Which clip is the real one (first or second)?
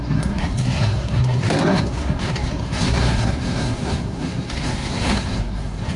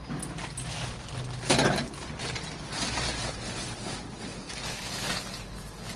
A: second